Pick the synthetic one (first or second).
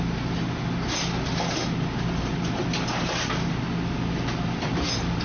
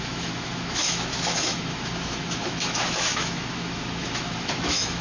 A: second